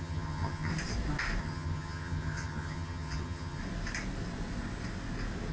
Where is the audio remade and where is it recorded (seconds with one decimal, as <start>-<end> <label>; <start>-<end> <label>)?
0.0-0.7 remade; 0.7-1.4 recorded; 1.4-3.6 remade; 3.6-5.5 recorded

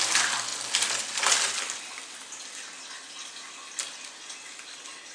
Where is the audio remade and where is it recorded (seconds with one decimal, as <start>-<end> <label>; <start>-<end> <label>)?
0.0-5.1 recorded

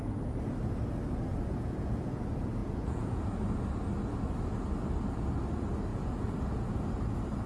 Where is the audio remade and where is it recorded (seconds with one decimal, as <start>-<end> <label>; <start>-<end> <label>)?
0.0-1.3 recorded; 1.3-2.2 remade; 2.2-2.6 recorded; 2.6-3.2 remade; 3.2-5.9 recorded; 5.9-6.7 remade; 6.7-7.5 recorded

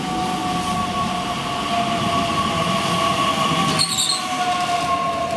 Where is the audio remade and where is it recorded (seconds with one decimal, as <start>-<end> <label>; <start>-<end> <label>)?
0.0-5.4 recorded

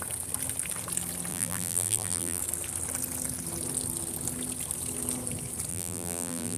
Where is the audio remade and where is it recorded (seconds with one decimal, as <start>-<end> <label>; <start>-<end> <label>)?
0.0-1.3 recorded; 1.3-2.4 remade; 2.4-5.7 recorded; 5.7-6.6 remade

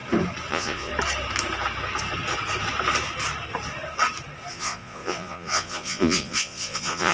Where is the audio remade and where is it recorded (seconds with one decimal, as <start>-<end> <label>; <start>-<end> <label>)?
0.0-0.5 recorded; 0.5-0.9 remade; 0.9-4.5 recorded; 4.5-7.1 remade

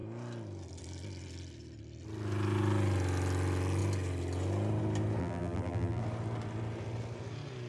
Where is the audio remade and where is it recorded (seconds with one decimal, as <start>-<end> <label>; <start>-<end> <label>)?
0.0-5.2 recorded; 5.2-6.0 remade; 6.0-7.7 recorded